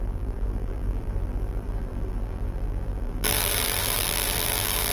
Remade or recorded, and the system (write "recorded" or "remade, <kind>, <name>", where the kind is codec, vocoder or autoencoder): remade, vocoder, BigVGAN v2